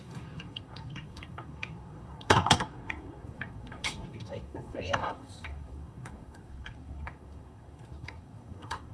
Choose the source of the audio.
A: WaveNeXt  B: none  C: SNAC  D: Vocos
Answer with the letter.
C